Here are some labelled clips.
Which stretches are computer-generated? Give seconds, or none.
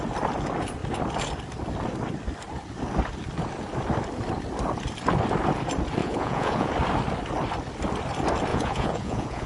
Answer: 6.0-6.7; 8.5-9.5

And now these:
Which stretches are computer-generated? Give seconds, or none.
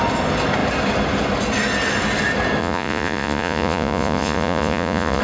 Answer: 2.6-5.2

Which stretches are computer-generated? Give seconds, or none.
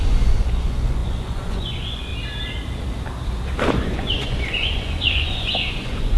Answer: 0.0-2.1; 3.7-6.2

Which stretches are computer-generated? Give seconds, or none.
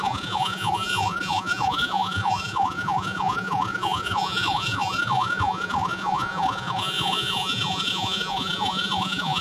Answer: 0.0-9.4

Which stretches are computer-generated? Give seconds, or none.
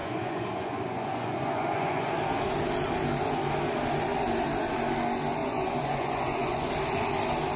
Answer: 0.0-2.2; 5.4-6.7